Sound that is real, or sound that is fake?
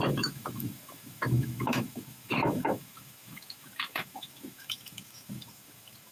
fake